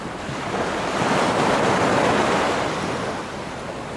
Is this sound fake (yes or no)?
no